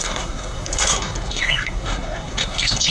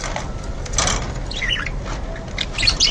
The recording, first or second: second